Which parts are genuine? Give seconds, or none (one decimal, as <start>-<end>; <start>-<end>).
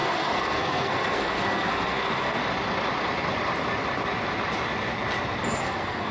2.4-5.5